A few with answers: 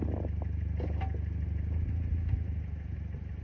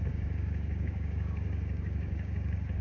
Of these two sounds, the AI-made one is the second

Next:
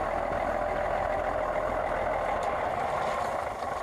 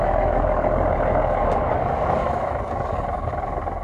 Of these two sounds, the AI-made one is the second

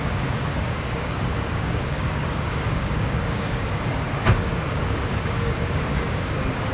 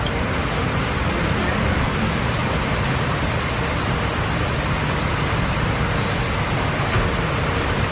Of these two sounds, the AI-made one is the first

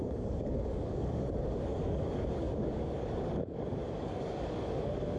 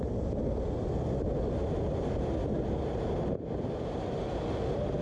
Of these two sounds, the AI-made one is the first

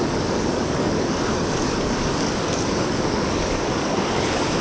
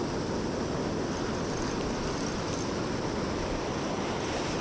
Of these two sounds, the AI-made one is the first